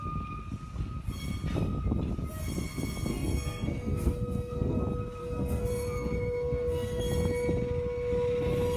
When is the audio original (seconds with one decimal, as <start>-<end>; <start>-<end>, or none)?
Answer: 0.0-3.1; 4.8-5.2; 7.0-8.8